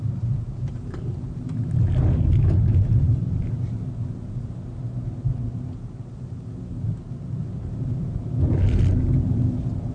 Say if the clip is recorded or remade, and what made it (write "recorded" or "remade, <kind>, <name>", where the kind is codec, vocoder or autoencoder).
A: recorded